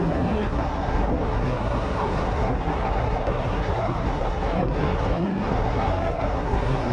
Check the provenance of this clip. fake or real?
fake